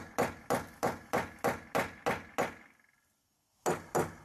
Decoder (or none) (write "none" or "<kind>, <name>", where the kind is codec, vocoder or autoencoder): none